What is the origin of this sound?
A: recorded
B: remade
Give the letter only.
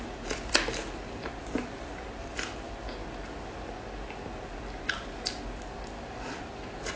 A